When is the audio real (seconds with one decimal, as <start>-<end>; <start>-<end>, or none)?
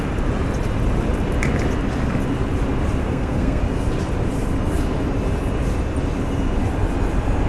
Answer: 0.0-3.0; 3.6-7.5